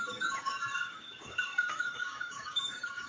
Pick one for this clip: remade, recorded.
remade